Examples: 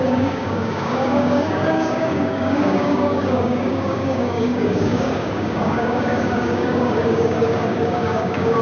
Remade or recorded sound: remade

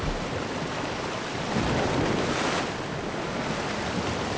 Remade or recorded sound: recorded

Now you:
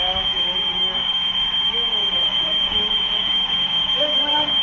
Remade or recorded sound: remade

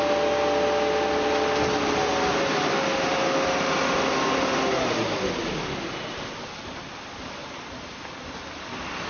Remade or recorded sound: recorded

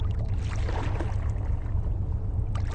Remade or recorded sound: recorded